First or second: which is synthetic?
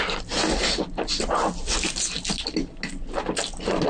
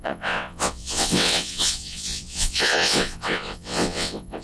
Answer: second